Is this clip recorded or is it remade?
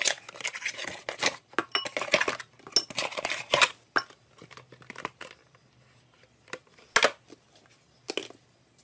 recorded